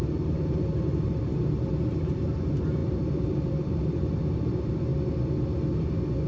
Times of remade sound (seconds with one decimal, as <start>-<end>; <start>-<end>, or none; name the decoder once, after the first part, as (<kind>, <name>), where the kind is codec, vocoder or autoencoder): 0.0-4.9 (vocoder, BigVGAN v2)